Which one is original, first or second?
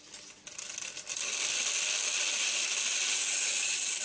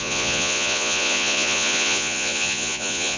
first